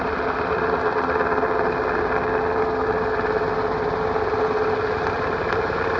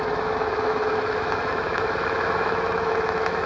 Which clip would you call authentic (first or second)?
first